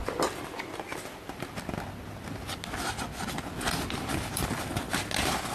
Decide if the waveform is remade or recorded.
recorded